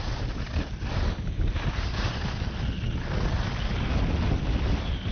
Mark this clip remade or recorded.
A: recorded